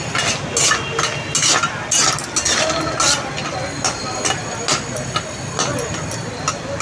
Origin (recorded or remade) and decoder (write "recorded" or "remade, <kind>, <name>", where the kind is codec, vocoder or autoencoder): recorded